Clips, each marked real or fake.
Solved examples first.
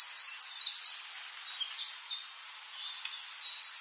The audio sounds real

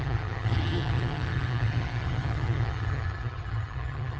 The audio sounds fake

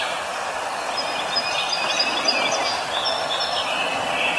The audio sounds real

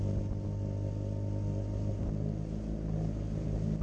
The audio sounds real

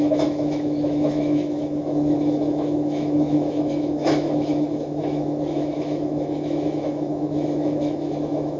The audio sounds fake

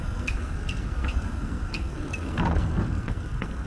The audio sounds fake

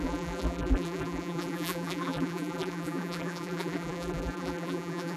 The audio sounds fake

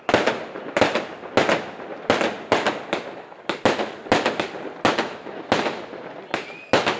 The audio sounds real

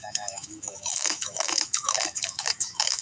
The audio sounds fake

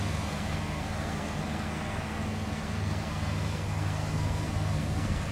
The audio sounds fake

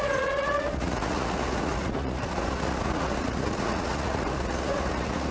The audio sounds fake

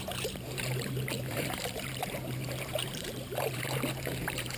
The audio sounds fake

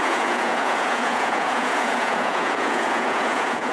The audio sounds fake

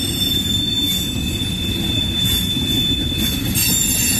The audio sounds real